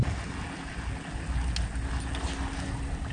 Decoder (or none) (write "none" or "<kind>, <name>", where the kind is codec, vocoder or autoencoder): none